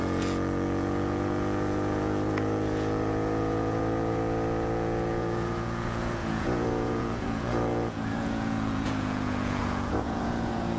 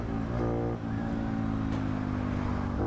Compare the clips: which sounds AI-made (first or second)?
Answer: first